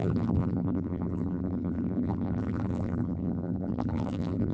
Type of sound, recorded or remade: remade